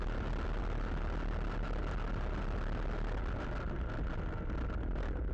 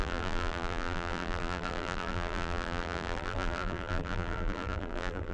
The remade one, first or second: second